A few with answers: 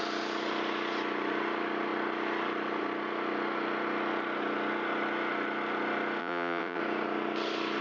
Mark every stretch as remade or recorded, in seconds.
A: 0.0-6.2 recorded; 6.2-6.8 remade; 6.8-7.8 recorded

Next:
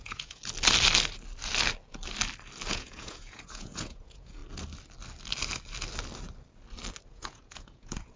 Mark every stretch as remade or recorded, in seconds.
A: 0.0-0.4 remade; 0.4-2.7 recorded; 2.7-4.4 remade; 4.4-7.1 recorded; 7.1-8.2 remade

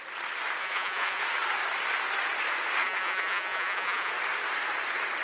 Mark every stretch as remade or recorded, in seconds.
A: 0.0-0.6 recorded; 0.6-1.2 remade; 1.2-2.8 recorded; 2.8-4.1 remade; 4.1-5.2 recorded

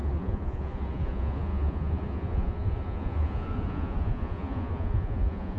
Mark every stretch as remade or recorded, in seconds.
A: 0.0-5.6 remade